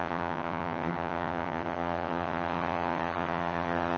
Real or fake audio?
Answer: fake